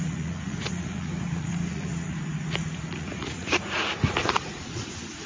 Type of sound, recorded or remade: remade